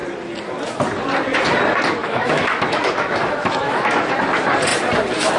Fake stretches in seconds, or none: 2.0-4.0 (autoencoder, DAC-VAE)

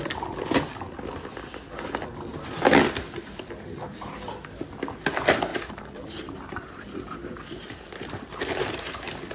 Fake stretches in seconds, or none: 2.3-4.1 (vocoder, BigVGAN v2); 5.5-9.3